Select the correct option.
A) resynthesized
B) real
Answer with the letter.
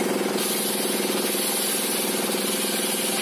B